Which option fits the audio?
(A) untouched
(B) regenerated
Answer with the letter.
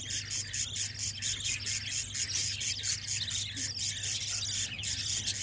A